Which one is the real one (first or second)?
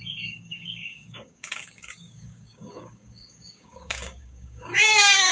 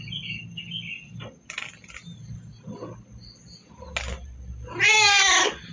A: second